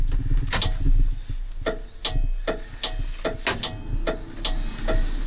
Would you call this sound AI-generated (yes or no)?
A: no